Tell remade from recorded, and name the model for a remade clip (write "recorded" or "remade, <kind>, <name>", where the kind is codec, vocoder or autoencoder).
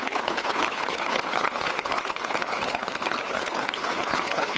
remade, codec, HILCodec